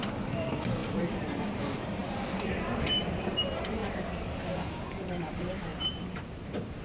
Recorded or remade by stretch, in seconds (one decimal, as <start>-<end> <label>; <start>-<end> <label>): 0.0-6.8 remade